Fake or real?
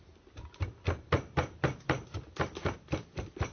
real